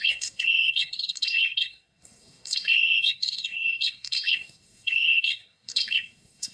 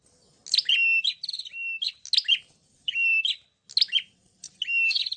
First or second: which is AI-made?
first